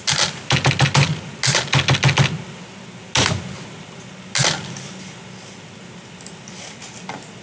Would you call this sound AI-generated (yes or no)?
no